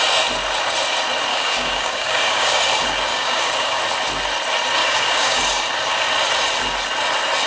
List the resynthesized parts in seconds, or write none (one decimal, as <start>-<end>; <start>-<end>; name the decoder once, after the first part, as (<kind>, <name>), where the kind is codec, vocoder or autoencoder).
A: 1.3-2.6 (codec, DAC); 3.1-3.8; 4.8-5.4